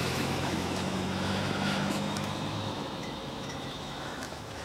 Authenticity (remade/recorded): remade